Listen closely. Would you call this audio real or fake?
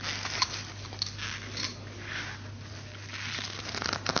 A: real